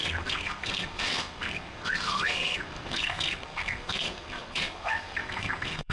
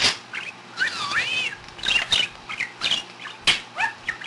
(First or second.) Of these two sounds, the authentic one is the second